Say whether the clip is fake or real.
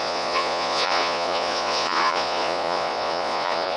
fake